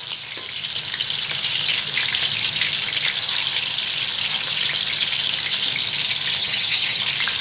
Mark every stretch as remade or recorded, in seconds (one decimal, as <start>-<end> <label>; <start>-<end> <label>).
0.0-6.4 recorded; 6.4-7.0 remade; 7.0-7.4 recorded